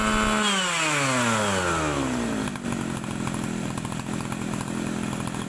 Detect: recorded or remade recorded